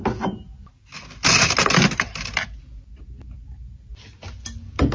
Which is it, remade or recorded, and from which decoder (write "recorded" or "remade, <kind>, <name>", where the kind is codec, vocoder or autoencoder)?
recorded